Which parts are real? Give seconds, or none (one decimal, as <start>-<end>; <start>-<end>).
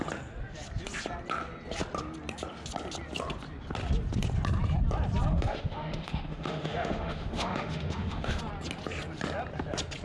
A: 0.0-5.3; 8.4-10.0